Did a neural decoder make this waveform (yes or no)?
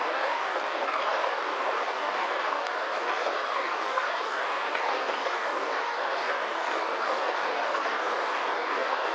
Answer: yes